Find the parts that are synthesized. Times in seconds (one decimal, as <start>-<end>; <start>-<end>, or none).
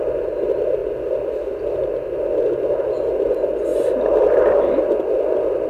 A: none